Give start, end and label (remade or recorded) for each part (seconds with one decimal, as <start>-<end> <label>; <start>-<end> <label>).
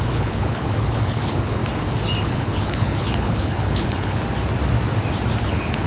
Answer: 0.0-1.6 remade; 1.6-2.2 recorded; 2.2-4.2 remade; 4.2-5.4 recorded; 5.4-5.9 remade